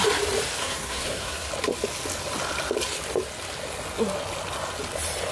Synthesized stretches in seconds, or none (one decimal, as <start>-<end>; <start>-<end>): 0.6-1.5